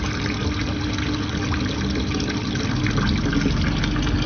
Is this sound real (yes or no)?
yes